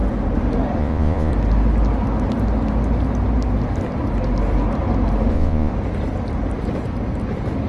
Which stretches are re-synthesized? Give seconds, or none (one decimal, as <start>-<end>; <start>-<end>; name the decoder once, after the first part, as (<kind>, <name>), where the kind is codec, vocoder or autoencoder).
0.8-1.3 (vocoder, Vocos); 5.3-5.7